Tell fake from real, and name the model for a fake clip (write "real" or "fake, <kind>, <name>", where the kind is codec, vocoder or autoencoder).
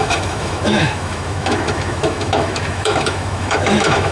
fake, autoencoder, DAC-VAE